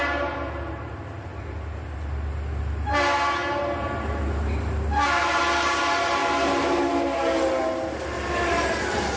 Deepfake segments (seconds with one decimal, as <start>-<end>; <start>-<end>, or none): none